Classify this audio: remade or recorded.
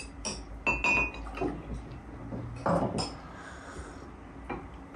recorded